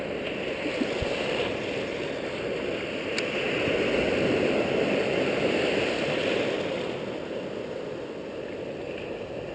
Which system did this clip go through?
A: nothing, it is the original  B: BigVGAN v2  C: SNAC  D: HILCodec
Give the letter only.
A